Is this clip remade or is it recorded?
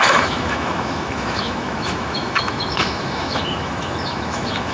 remade